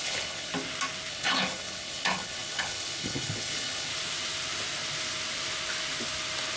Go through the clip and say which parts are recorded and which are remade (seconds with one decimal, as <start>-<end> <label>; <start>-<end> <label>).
0.0-0.5 remade; 0.5-1.1 recorded; 1.1-3.9 remade; 3.9-6.6 recorded

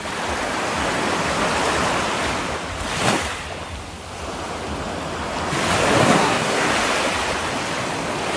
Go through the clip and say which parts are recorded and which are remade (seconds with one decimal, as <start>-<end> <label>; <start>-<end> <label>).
0.0-6.0 recorded; 6.0-6.7 remade; 6.7-8.4 recorded